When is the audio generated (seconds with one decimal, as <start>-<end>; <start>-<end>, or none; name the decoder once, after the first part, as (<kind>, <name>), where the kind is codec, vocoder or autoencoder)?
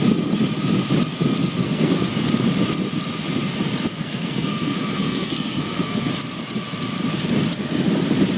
1.6-2.1 (codec, SNAC); 3.9-6.1